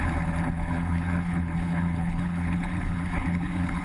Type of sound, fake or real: fake